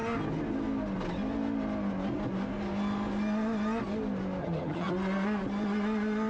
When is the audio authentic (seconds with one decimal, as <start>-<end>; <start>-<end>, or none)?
0.0-4.4; 4.9-6.3